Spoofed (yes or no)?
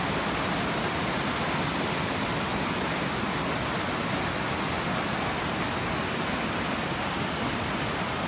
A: no